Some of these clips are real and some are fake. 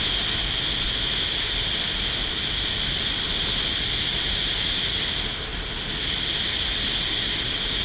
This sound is real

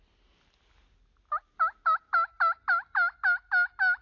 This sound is real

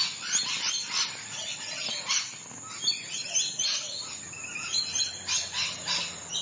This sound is real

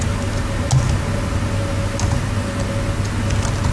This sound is real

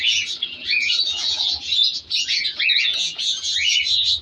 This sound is fake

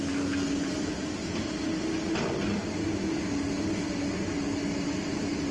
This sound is real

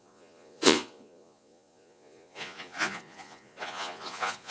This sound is fake